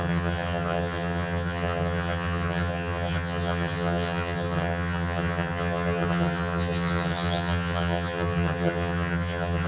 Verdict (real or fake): fake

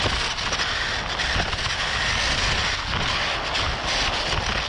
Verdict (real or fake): real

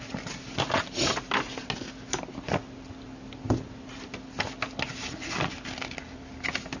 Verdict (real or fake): real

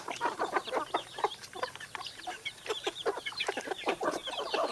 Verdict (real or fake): fake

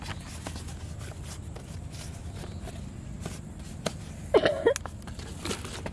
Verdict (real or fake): real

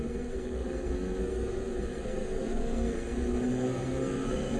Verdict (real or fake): fake